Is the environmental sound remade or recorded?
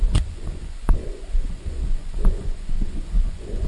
remade